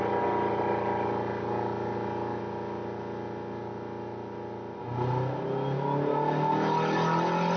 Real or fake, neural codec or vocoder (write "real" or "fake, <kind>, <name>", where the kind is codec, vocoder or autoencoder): real